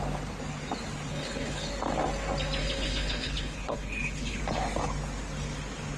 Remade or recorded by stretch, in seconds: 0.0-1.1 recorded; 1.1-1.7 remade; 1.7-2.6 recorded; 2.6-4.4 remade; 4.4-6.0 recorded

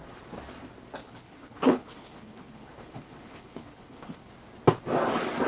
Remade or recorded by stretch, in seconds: 0.0-1.0 recorded; 1.0-4.3 remade; 4.3-5.5 recorded

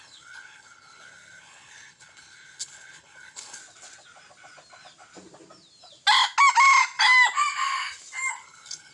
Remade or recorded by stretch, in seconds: 0.0-3.6 remade; 3.6-8.3 recorded; 8.3-8.9 remade

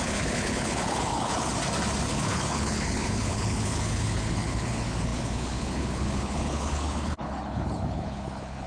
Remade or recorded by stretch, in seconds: 0.0-1.5 remade; 1.5-2.1 recorded; 2.1-8.7 remade

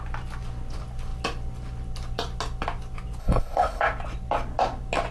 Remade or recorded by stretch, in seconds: 0.0-3.2 recorded; 3.2-3.8 remade; 3.8-5.1 recorded

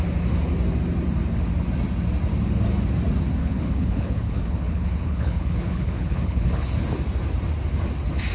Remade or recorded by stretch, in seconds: 0.0-3.4 recorded; 3.4-6.7 remade; 6.7-8.3 recorded